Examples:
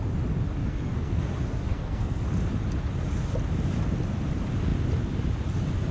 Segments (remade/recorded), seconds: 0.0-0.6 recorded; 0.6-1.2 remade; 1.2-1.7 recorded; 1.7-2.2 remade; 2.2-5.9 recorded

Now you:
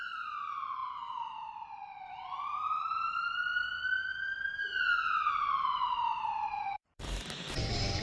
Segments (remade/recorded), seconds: 0.0-3.5 remade; 3.5-5.3 recorded; 5.3-8.0 remade